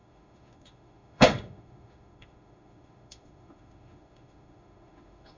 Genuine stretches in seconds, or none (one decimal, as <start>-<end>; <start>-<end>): none

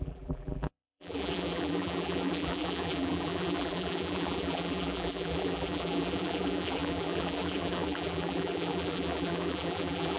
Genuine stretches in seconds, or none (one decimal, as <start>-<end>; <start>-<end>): none

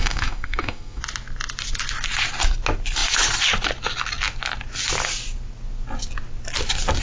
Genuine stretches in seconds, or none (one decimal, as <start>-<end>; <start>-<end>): 1.0-7.0